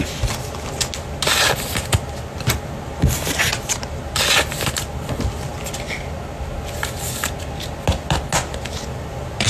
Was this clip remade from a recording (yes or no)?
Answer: no